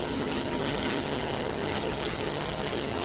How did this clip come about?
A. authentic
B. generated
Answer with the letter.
B